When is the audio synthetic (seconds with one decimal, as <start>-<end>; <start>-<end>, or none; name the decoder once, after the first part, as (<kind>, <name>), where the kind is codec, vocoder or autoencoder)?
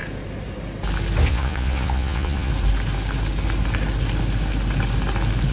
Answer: 1.3-2.5 (vocoder, Vocos)